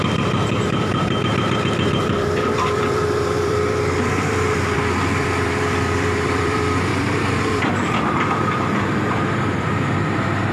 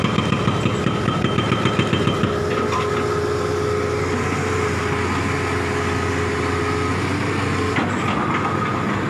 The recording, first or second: second